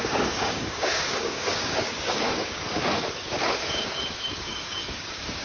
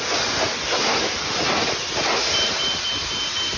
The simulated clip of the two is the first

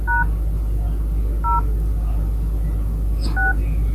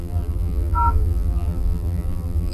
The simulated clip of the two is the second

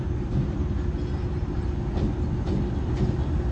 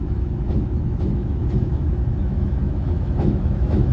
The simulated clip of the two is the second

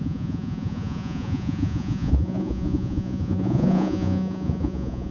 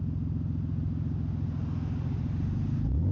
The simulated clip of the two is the first